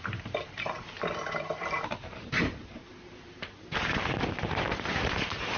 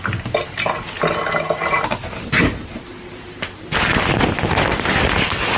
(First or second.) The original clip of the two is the second